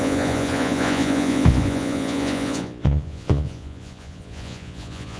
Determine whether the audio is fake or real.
fake